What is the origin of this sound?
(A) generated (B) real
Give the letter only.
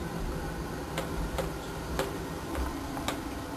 A